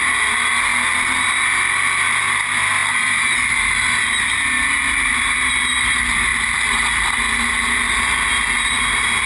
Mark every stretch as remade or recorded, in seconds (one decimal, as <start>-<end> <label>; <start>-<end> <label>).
0.0-9.3 recorded